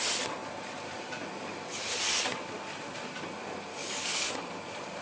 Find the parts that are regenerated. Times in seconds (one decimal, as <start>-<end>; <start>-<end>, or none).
3.7-4.3